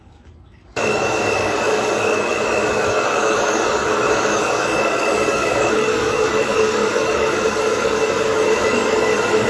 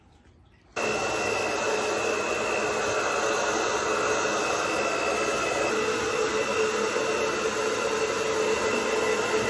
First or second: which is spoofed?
first